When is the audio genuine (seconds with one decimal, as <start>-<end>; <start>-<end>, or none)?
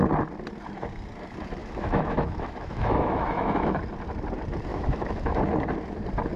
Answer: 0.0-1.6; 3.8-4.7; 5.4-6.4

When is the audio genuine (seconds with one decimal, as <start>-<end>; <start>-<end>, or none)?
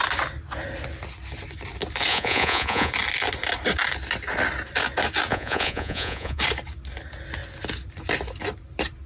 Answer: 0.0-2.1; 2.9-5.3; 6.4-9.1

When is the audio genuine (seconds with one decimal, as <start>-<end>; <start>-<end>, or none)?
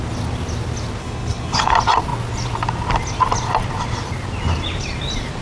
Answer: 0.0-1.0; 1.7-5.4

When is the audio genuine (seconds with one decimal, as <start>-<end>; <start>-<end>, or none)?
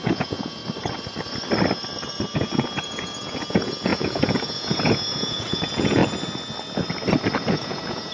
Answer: 0.6-2.3; 6.0-7.5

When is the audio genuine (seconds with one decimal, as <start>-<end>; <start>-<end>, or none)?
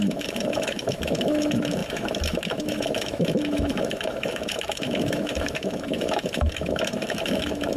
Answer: none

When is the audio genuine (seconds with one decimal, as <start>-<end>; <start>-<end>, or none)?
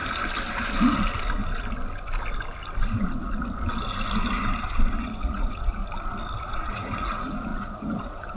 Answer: 0.0-5.0; 5.8-6.4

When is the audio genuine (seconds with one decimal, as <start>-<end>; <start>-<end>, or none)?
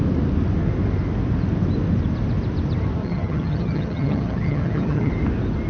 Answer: 0.0-3.0; 5.1-5.7